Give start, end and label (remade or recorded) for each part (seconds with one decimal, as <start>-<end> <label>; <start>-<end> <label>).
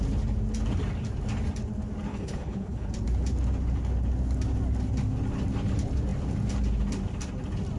0.0-2.1 recorded; 2.1-2.9 remade; 2.9-7.8 recorded